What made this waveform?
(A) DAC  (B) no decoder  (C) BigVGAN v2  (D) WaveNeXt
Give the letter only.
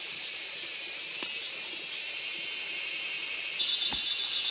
B